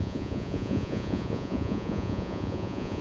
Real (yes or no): no